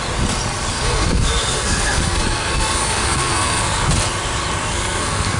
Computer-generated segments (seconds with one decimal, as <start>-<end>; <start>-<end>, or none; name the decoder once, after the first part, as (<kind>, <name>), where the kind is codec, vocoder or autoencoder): 0.7-3.9 (codec, SNAC); 4.6-5.4